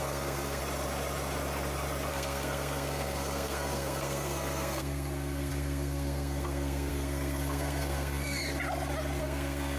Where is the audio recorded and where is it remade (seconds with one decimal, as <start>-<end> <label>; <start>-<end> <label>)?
0.0-0.6 remade; 0.6-2.1 recorded; 2.1-8.4 remade; 8.4-9.2 recorded; 9.2-9.8 remade